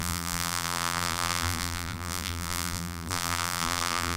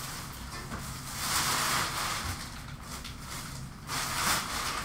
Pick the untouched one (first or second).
second